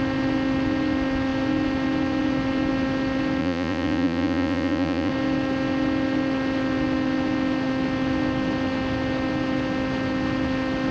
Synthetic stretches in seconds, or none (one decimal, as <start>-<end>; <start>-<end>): 3.4-5.1